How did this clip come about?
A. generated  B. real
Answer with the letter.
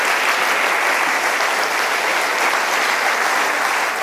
B